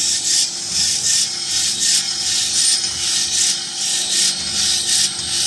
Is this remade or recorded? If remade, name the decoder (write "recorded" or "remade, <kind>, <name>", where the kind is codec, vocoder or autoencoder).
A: recorded